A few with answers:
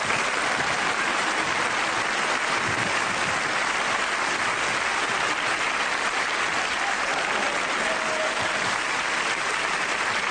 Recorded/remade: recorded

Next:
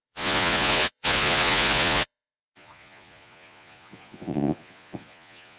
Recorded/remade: remade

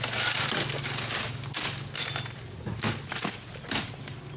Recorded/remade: recorded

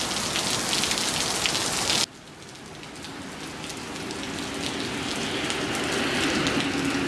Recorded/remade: recorded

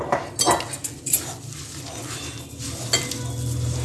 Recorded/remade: recorded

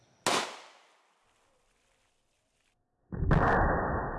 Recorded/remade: recorded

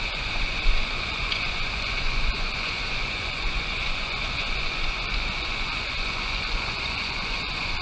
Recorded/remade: remade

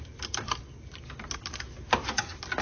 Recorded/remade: recorded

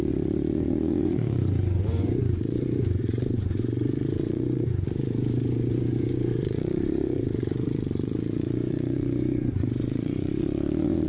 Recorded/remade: remade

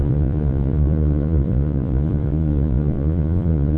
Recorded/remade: remade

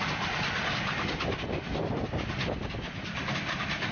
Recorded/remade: recorded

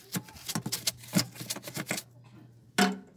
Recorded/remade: recorded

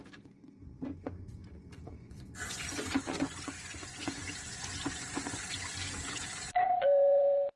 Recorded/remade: remade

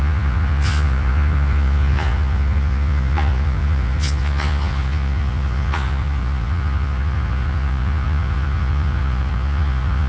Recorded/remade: remade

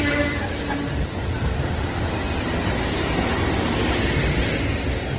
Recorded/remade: recorded